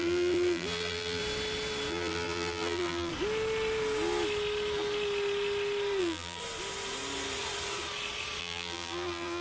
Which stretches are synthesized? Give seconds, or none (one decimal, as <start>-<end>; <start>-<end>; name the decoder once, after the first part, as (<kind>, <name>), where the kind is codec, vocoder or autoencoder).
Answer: 0.0-1.2 (vocoder, BigVGAN v2); 1.9-3.1; 6.0-6.4; 8.4-9.4